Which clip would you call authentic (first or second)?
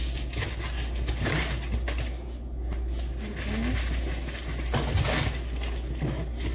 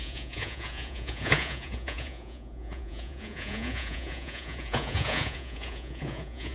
first